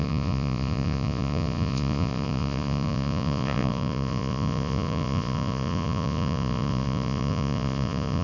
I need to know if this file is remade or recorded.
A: remade